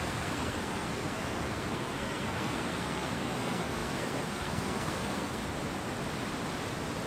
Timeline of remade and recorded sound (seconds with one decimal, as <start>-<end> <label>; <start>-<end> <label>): 0.0-5.4 remade; 5.4-7.1 recorded